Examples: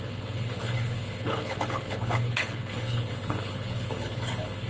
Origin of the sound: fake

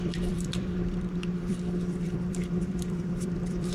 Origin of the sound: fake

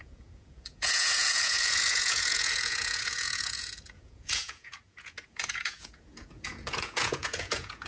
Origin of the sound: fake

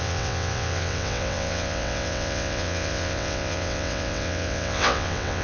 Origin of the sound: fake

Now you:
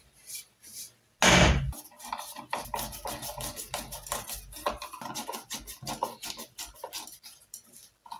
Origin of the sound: real